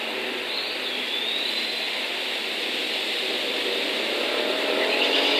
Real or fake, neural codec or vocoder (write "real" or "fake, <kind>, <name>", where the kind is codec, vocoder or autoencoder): real